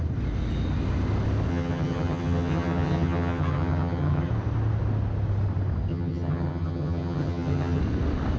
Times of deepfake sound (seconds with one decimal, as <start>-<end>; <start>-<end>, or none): 1.5-4.3; 5.9-7.8

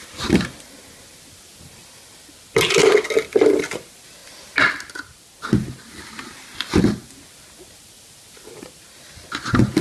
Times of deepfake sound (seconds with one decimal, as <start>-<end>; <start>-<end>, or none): none

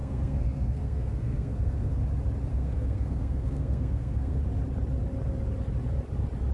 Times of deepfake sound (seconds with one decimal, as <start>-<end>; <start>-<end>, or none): 0.0-2.0; 2.5-4.4

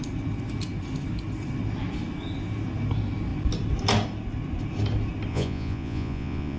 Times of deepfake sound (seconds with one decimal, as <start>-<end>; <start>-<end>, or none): 5.3-6.6

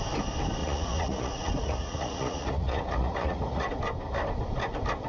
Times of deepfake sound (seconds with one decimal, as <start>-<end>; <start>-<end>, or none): 0.6-3.7

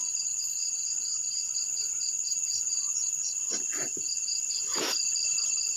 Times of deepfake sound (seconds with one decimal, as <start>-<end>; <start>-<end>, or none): none

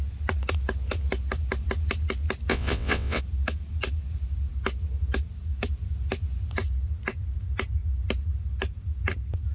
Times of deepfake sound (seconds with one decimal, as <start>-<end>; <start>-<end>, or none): 2.5-3.2